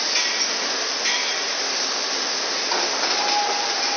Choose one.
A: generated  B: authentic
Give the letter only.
B